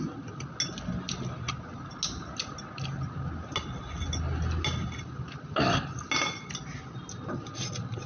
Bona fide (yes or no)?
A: yes